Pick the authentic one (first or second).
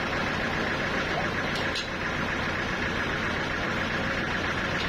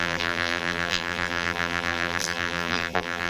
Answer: first